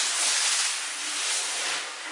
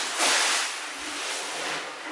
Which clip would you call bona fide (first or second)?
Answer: first